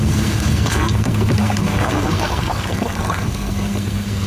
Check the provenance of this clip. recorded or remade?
remade